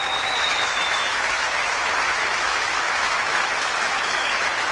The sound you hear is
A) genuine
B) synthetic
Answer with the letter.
B